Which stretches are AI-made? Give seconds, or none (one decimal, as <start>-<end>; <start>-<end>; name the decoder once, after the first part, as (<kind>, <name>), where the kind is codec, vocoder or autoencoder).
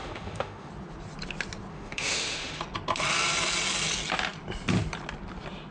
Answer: 0.0-0.7 (autoencoder, DAC-VAE); 1.7-2.6